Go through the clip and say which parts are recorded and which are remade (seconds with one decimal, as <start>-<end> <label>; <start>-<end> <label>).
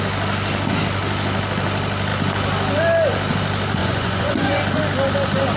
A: 0.0-3.8 recorded; 3.8-4.6 remade; 4.6-5.6 recorded